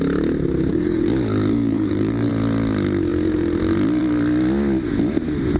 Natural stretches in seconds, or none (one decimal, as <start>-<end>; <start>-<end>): 0.0-0.7; 2.3-5.6